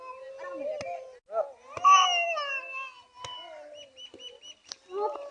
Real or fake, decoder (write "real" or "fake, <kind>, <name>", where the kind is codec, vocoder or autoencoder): real